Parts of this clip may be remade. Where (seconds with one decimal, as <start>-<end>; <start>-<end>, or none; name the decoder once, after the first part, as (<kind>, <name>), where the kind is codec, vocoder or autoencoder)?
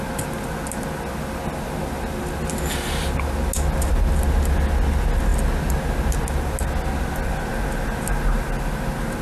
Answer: none